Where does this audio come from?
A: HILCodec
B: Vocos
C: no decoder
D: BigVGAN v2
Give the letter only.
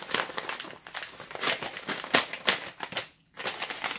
C